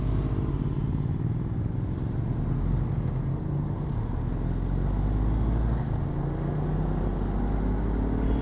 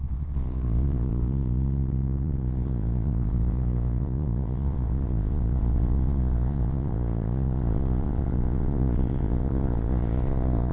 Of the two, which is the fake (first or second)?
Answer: second